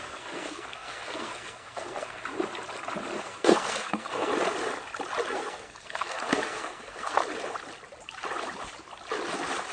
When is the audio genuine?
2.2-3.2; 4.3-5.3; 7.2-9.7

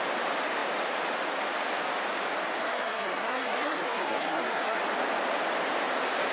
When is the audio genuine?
0.0-2.6; 4.8-6.3

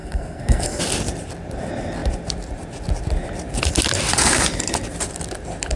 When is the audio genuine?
0.8-5.8

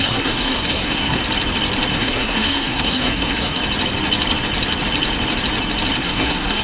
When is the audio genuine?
1.2-1.9; 3.6-6.0

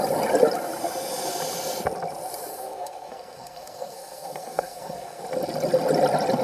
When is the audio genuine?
0.0-2.5; 5.2-6.4

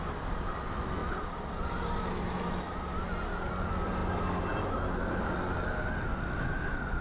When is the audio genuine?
0.0-7.0

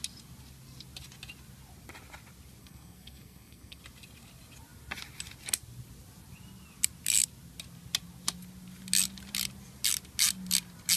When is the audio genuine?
0.0-2.6; 3.8-11.0

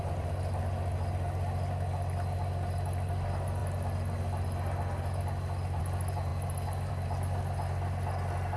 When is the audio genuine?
0.0-8.6